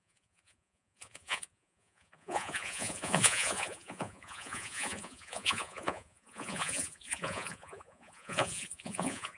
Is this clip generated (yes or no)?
yes